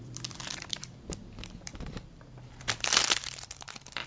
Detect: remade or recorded remade